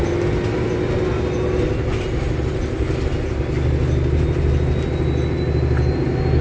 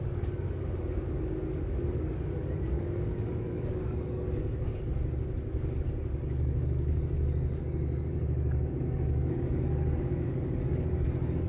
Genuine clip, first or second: first